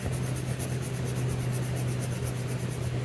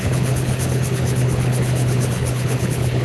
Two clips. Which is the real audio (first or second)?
first